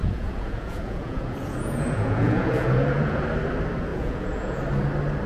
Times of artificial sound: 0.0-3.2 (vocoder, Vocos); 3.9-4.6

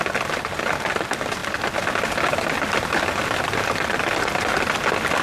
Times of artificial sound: none

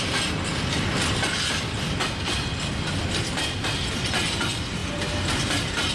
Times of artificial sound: none

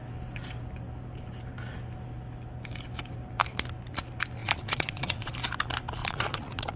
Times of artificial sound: 4.4-5.3 (vocoder, Vocos); 6.0-6.8

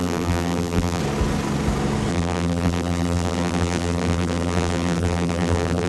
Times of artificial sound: 0.0-1.0 (vocoder, BigVGAN v2); 2.1-5.9

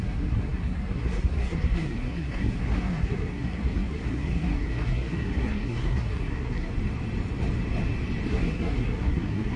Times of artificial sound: 0.0-6.7 (codec, SNAC); 8.3-9.6